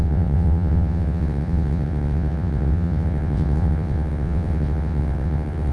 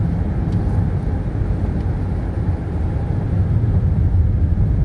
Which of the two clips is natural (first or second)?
second